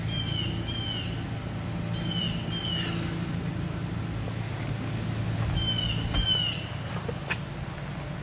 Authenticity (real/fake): real